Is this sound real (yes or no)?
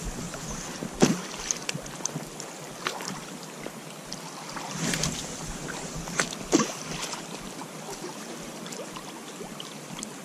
no